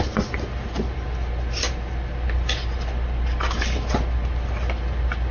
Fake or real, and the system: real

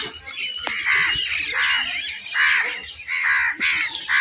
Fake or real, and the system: real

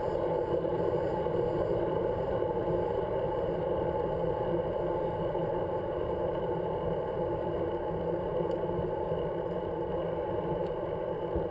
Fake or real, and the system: real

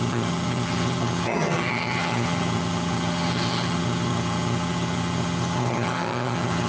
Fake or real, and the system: fake, vocoder, HiFi-GAN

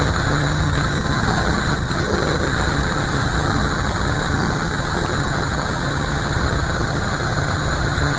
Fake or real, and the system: fake, vocoder, HiFi-GAN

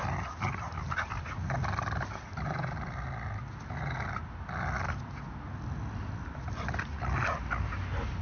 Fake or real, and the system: real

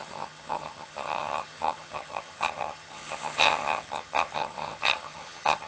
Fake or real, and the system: fake, vocoder, HiFi-GAN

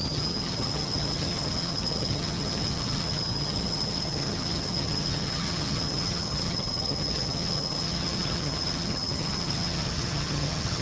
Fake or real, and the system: fake, vocoder, HiFi-GAN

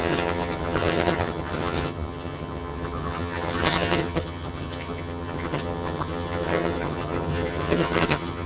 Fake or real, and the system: fake, vocoder, HiFi-GAN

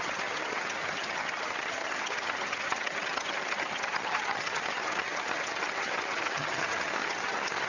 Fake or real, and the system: fake, vocoder, HiFi-GAN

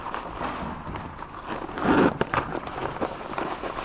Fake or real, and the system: real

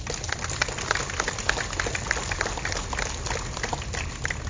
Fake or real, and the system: real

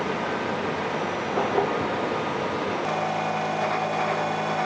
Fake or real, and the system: real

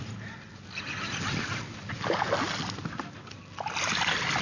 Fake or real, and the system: real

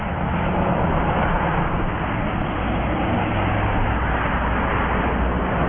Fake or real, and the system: real